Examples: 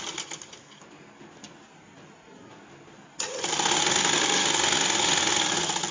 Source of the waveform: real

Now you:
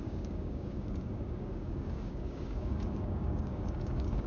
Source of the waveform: fake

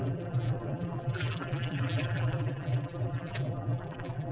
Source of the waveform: fake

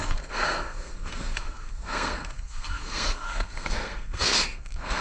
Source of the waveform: fake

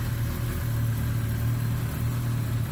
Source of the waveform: real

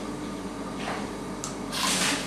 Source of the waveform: real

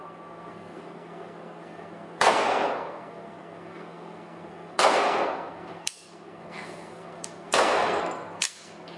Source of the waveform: fake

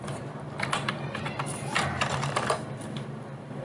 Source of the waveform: fake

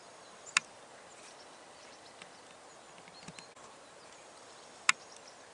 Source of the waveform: real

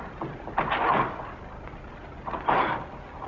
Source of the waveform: real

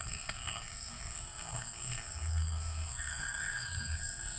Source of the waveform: fake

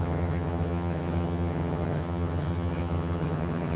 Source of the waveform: fake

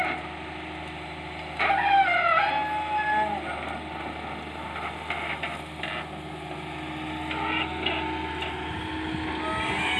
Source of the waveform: real